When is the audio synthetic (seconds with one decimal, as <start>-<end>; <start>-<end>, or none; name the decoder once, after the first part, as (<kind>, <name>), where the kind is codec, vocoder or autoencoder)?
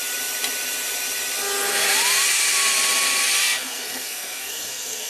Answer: 3.4-5.1 (codec, SNAC)